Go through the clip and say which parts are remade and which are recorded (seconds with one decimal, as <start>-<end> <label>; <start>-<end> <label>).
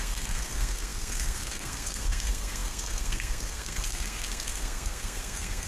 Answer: 0.0-5.7 remade